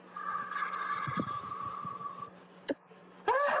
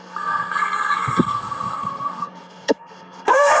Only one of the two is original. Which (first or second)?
first